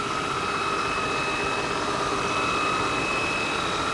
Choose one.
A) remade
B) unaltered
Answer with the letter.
B